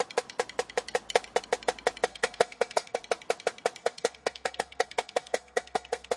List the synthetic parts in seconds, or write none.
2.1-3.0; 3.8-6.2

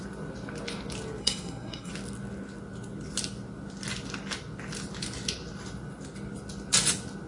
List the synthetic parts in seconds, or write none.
1.2-1.9